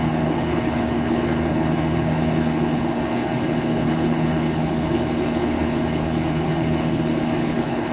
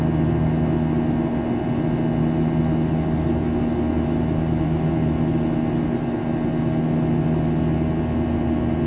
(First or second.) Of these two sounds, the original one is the second